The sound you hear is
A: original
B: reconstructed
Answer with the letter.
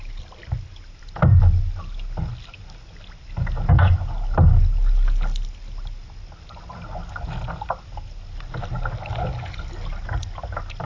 A